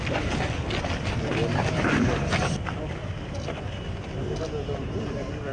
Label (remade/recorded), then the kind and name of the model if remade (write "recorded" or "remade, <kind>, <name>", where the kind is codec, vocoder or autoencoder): recorded